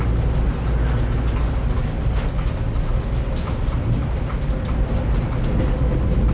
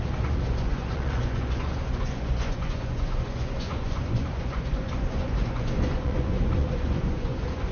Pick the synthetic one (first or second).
second